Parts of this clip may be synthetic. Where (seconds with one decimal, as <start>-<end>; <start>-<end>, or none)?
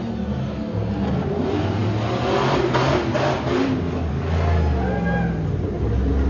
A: 0.4-0.9